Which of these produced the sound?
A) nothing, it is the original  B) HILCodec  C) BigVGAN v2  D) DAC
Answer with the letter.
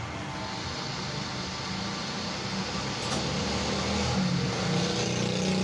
A